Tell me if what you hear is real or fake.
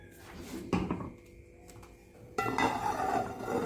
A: real